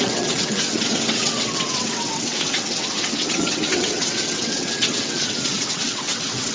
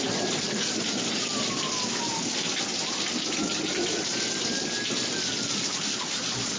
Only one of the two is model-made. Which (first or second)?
first